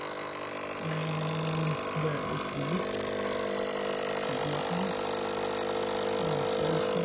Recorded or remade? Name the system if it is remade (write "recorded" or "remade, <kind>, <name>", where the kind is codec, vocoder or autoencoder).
recorded